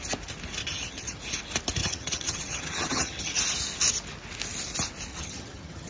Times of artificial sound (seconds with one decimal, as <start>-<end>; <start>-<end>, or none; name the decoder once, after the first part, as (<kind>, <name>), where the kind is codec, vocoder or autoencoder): 0.6-1.2 (vocoder, HiFi-GAN); 1.8-3.4; 5.1-5.9